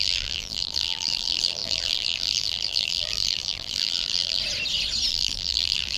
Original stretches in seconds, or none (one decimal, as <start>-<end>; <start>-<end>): 4.4-5.1